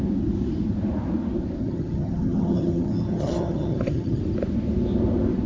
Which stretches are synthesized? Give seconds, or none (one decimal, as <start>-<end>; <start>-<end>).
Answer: 1.6-4.2

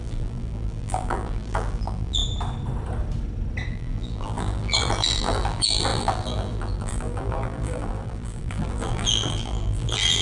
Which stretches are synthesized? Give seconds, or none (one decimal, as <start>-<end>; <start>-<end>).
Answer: 0.0-2.2; 3.7-10.2

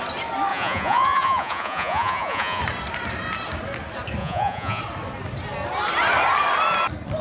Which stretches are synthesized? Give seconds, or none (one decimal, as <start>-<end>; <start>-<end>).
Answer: 0.5-2.6; 4.2-4.8

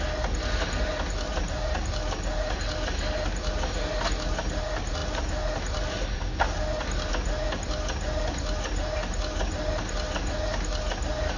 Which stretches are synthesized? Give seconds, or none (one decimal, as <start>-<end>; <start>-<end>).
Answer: none

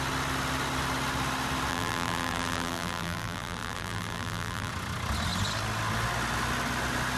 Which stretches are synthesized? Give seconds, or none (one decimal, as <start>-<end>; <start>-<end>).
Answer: 1.7-4.7